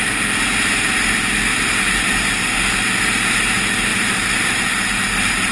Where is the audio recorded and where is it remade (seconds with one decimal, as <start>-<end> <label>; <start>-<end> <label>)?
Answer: 0.0-3.9 recorded; 3.9-4.6 remade; 4.6-5.5 recorded